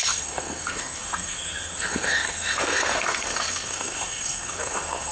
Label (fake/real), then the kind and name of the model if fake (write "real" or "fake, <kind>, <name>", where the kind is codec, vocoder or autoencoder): fake, codec, SNAC